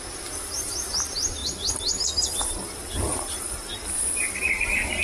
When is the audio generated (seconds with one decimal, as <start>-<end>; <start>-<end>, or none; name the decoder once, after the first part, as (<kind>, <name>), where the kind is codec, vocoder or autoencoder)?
none